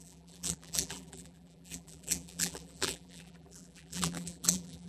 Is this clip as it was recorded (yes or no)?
no